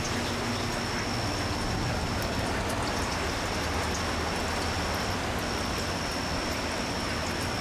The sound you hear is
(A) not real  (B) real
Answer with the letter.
B